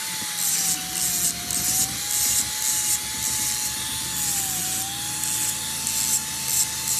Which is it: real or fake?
real